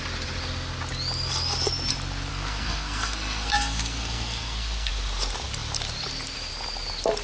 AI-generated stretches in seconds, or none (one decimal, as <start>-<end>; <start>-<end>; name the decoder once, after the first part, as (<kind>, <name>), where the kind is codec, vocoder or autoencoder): 2.3-4.9 (codec, SNAC)